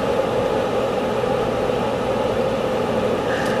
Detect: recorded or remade recorded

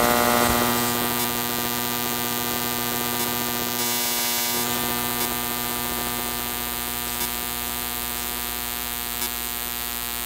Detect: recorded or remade recorded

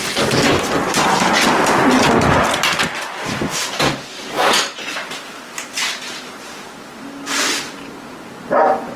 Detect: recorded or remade recorded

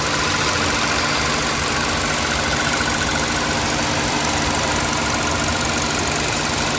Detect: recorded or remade recorded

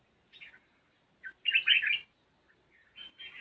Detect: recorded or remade recorded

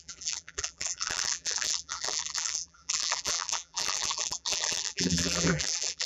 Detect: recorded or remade remade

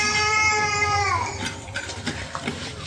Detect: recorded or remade remade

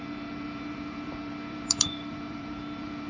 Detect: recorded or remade remade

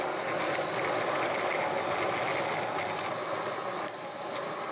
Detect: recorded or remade recorded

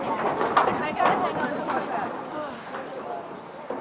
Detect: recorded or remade remade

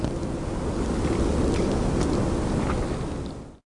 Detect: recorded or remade recorded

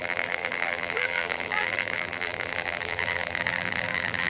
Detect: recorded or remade remade